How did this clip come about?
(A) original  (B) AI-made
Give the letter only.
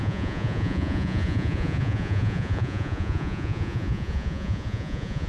B